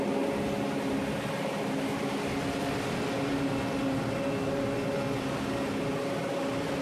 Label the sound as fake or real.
real